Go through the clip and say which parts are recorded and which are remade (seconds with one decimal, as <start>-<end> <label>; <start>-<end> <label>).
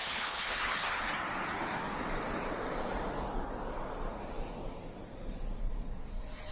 0.0-1.0 remade; 1.0-6.5 recorded